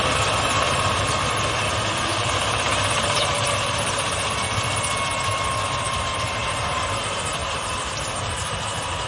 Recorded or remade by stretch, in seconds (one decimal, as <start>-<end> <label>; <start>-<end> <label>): 0.0-2.1 recorded; 2.1-4.3 remade; 4.3-6.4 recorded; 6.4-7.0 remade; 7.0-7.4 recorded; 7.4-9.1 remade